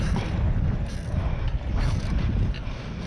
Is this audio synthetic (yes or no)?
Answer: no